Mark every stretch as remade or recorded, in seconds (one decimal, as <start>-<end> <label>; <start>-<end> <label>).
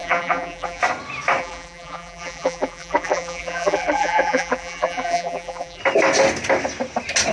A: 0.0-0.8 remade; 0.8-1.4 recorded; 1.4-5.8 remade; 5.8-7.3 recorded